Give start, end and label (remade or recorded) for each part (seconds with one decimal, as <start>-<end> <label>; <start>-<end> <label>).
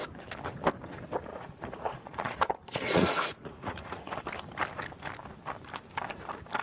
0.0-1.3 recorded; 1.3-4.2 remade; 4.2-6.6 recorded